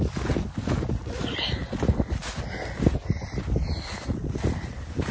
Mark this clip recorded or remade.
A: recorded